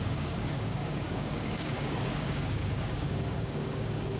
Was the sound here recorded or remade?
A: remade